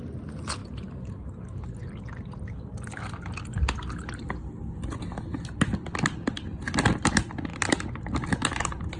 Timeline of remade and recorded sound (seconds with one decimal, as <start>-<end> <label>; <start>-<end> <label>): 0.0-9.0 recorded